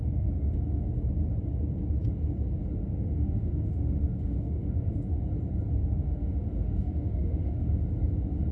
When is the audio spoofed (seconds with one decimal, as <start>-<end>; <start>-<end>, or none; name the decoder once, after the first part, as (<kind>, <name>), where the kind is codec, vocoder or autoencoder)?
0.0-0.9 (autoencoder, DAC-VAE); 2.8-5.2; 5.8-7.7